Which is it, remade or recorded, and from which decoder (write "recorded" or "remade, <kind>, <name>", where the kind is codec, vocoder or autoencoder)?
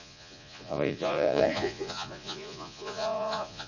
remade, vocoder, Vocos